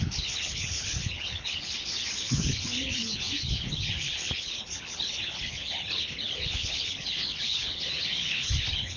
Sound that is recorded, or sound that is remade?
remade